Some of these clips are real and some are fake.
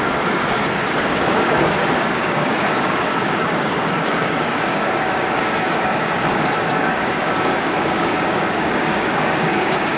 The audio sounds fake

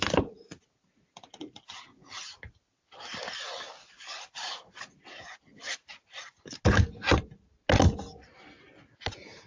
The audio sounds real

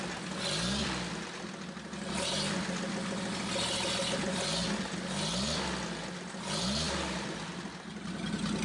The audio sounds real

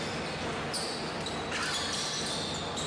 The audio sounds real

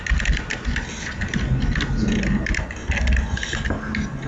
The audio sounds real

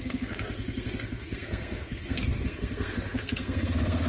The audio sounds fake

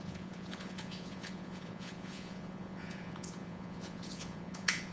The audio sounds fake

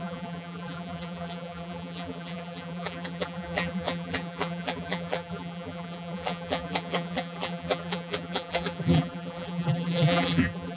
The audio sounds fake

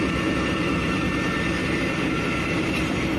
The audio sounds real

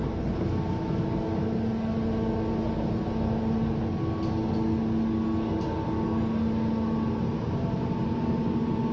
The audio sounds real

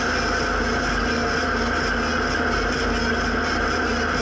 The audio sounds real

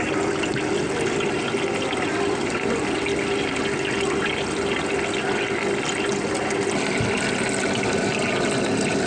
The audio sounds real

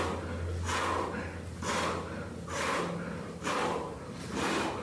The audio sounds real